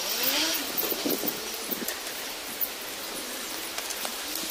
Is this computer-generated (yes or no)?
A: yes